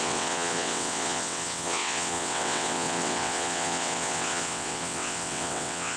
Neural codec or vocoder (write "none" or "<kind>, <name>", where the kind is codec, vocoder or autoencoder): vocoder, WaveNeXt